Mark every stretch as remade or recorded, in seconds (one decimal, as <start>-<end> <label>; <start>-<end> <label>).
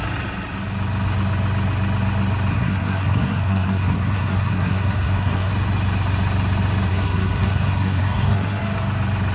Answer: 0.0-2.5 recorded; 2.5-5.5 remade; 5.5-6.9 recorded; 6.9-8.6 remade; 8.6-9.3 recorded